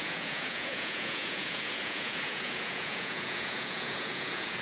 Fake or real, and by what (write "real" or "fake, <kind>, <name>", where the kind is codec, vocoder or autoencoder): fake, vocoder, Vocos